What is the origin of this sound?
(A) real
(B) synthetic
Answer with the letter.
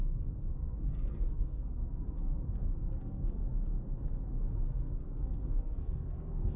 B